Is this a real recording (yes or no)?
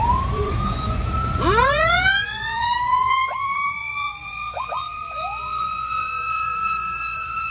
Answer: no